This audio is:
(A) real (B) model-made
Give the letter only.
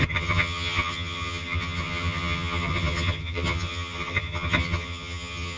B